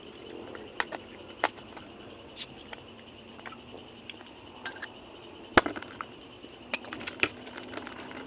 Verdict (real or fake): real